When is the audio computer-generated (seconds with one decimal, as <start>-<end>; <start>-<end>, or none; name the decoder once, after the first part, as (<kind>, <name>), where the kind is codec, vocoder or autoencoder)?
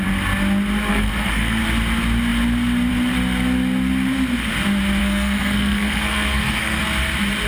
0.9-1.6 (codec, SNAC); 5.0-6.8